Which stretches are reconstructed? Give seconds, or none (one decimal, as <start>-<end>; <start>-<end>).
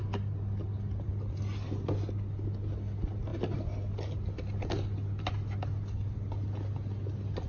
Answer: none